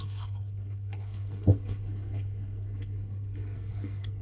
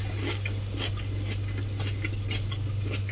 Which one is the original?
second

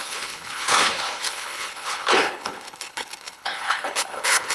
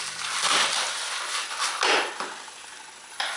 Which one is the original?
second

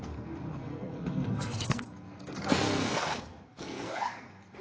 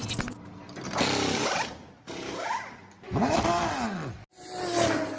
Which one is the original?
second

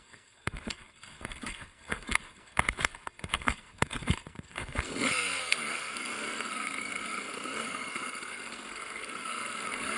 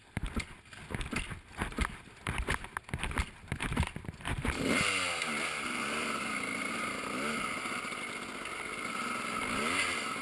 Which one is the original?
second